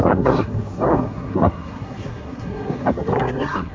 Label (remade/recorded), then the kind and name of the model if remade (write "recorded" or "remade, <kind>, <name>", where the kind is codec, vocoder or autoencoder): remade, codec, SNAC